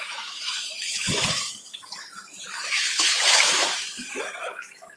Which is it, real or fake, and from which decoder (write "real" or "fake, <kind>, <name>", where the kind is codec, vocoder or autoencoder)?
fake, autoencoder, DAC-VAE